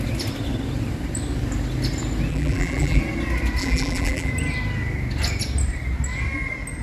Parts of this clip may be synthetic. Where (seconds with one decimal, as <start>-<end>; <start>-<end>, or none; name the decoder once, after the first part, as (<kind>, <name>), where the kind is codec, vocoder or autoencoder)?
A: 2.3-3.0 (vocoder, BigVGAN v2); 3.6-4.3